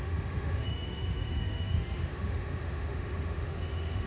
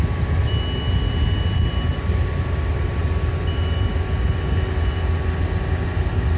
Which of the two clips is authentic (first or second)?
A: second